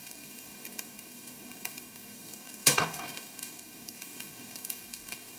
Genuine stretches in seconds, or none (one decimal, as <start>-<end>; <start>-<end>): none